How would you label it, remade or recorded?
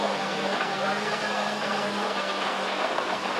remade